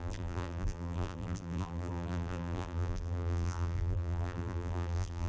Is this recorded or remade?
remade